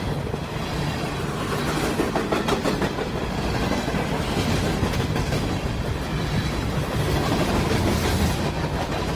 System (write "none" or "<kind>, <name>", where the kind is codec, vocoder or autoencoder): none